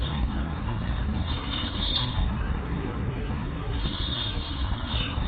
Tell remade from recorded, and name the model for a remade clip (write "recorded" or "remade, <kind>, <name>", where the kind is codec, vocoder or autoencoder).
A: remade, codec, SNAC